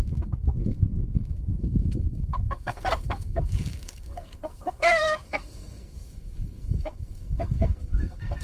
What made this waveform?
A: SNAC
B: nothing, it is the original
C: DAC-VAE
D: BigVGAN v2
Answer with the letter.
A